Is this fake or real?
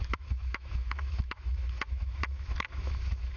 fake